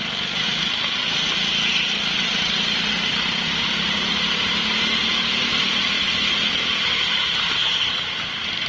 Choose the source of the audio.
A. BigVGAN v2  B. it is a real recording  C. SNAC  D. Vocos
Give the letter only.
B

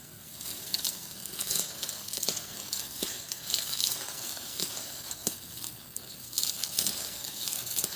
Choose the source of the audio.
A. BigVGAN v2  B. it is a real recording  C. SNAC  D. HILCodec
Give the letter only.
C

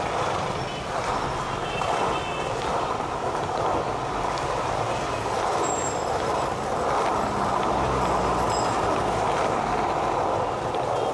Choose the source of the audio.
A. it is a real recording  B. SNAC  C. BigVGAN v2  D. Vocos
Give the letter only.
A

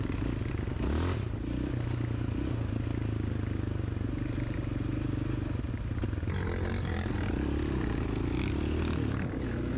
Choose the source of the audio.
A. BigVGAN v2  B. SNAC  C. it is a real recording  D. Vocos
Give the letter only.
C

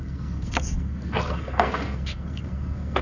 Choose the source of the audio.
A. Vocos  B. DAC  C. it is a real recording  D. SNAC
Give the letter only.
D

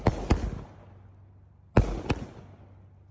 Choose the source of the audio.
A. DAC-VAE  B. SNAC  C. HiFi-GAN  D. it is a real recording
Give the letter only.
D